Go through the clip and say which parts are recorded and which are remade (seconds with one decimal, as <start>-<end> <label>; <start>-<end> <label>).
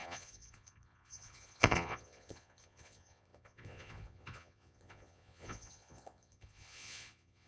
0.0-7.5 remade